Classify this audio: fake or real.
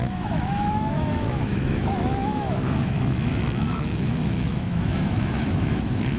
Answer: fake